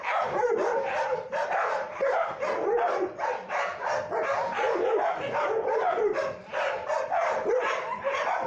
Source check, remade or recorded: recorded